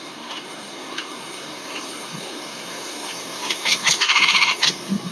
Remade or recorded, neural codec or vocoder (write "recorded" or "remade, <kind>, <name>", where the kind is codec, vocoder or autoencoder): remade, codec, SNAC